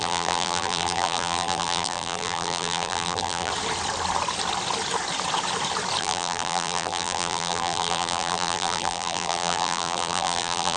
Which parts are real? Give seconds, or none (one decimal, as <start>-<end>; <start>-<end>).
3.5-6.0